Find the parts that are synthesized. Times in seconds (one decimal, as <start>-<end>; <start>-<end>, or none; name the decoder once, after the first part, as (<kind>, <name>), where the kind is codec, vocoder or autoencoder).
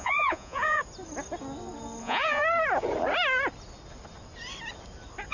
0.0-0.8 (vocoder, Vocos); 2.0-2.4